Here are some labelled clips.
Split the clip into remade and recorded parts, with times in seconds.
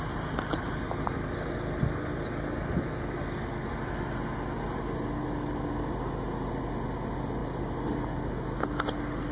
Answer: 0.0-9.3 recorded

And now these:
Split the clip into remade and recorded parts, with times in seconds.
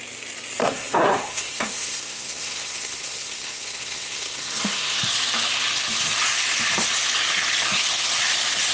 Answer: 0.0-0.6 recorded; 0.6-5.0 remade; 5.0-8.7 recorded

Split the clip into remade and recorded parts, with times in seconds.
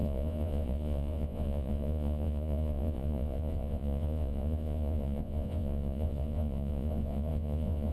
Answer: 0.0-7.9 remade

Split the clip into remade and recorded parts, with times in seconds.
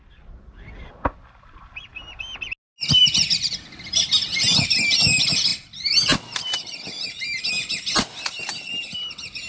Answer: 0.0-9.5 recorded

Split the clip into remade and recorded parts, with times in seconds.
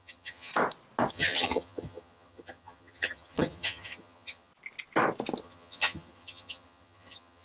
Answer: 0.0-0.5 remade; 0.5-1.1 recorded; 1.1-4.5 remade; 4.5-5.4 recorded; 5.4-7.4 remade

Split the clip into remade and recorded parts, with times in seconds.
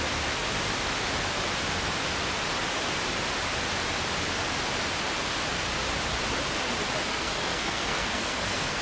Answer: 0.0-7.1 recorded; 7.1-8.8 remade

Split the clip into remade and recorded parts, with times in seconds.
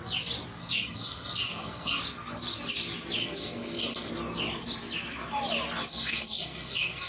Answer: 0.0-0.6 recorded; 0.6-2.0 remade; 2.0-3.2 recorded; 3.2-4.1 remade; 4.1-5.9 recorded; 5.9-7.1 remade